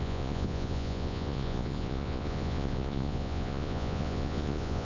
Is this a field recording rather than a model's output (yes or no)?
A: no